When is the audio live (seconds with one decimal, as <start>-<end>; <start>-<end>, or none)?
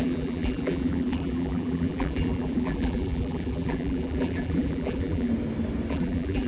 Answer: 5.3-5.9